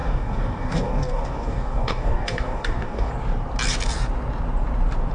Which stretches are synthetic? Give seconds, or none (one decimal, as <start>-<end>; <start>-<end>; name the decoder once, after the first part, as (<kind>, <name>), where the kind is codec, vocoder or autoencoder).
0.0-3.1 (codec, DAC)